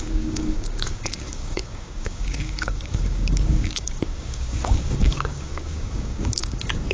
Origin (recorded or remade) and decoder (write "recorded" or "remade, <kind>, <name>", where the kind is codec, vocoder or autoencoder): remade, codec, DAC